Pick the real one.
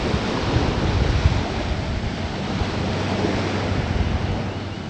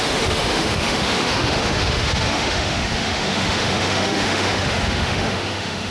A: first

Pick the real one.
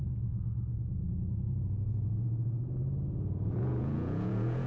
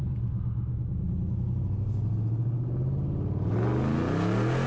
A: second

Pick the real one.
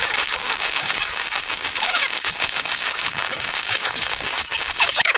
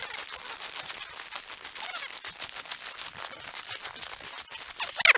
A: second